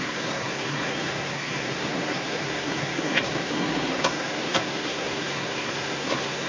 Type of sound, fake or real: fake